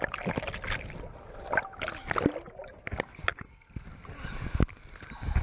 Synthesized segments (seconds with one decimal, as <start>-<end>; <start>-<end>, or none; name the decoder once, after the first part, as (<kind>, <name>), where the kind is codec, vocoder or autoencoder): none